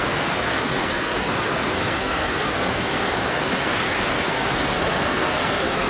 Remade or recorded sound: remade